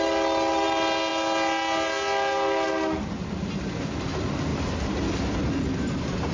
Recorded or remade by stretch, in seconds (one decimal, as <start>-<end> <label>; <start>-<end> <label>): 0.0-6.3 recorded